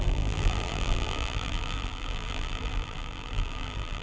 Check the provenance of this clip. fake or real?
fake